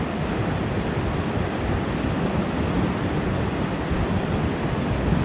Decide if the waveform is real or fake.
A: real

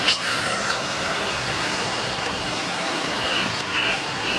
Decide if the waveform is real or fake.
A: fake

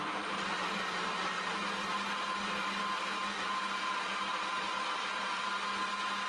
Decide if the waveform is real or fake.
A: real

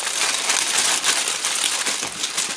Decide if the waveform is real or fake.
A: real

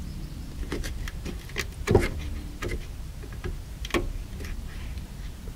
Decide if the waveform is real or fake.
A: real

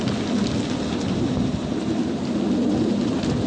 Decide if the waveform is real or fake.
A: real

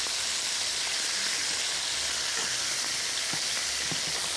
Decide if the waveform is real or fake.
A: real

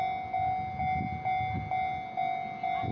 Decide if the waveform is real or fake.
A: real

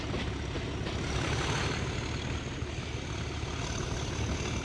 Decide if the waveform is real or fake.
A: real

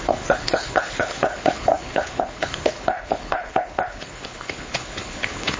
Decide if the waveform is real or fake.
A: fake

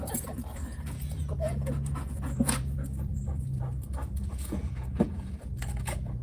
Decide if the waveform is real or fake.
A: fake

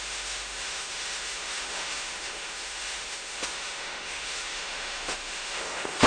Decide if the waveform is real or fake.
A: fake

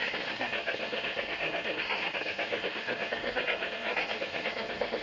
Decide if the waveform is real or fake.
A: fake